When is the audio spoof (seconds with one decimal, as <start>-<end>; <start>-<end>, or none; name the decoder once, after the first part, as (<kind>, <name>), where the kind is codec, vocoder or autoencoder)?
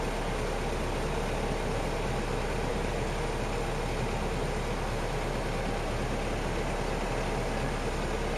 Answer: none